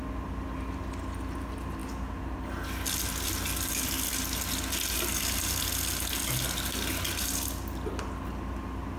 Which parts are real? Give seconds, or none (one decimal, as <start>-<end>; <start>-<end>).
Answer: 0.0-9.0